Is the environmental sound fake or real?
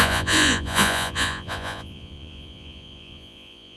fake